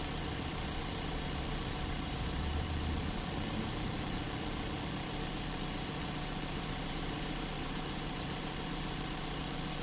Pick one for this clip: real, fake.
fake